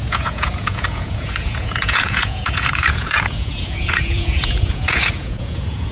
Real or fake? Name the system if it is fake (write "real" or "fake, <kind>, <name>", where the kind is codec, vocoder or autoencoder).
fake, vocoder, Vocos